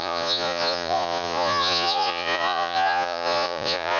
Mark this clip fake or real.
fake